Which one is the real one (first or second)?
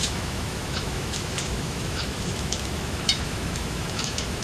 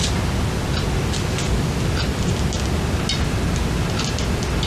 second